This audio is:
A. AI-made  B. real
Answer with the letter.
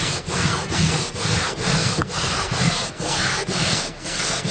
A